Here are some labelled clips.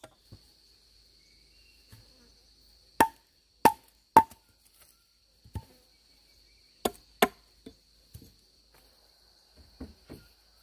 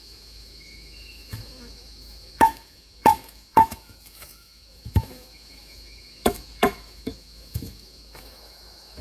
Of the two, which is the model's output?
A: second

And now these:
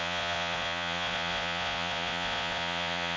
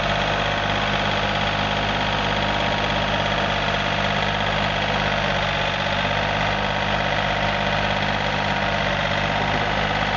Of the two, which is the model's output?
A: first